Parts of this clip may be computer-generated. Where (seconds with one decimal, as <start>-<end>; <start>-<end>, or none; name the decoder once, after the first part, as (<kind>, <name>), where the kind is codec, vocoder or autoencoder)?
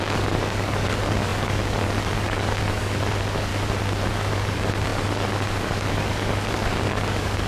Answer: 0.0-3.5 (codec, DAC); 4.1-7.5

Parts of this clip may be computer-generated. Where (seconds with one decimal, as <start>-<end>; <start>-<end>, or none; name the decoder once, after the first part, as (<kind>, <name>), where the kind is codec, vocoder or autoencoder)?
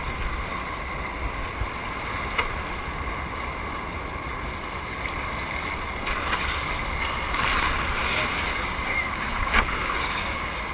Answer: 8.0-10.7 (codec, DAC)